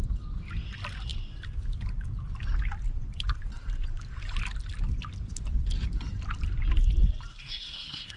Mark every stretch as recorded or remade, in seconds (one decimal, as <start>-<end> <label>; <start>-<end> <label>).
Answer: 0.0-7.3 recorded; 7.3-8.2 remade